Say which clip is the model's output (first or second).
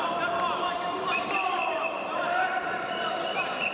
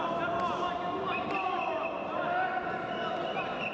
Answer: first